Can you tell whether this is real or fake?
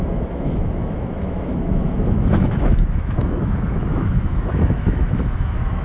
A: fake